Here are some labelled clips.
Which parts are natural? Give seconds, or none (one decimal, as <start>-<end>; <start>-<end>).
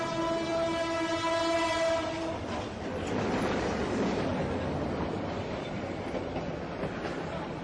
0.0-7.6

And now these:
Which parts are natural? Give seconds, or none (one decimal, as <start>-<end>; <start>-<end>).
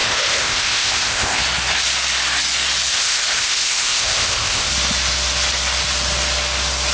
1.4-2.9; 4.7-6.9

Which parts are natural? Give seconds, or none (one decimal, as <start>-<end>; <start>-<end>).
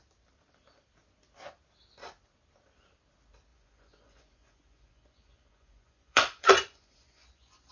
0.0-3.5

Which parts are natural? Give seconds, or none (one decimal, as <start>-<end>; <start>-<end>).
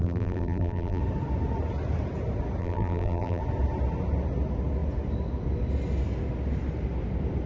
1.0-2.6; 3.4-7.5